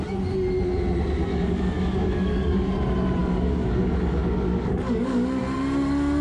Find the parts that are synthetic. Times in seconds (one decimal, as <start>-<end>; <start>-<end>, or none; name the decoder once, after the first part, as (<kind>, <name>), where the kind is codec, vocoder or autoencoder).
1.3-2.7 (codec, DAC); 3.2-5.4